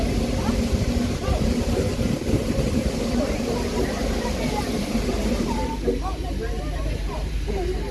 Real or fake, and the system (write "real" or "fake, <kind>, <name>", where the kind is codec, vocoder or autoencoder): fake, vocoder, BigVGAN v2